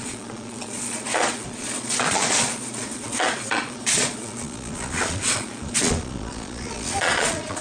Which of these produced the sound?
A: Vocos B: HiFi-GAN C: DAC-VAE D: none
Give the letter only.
A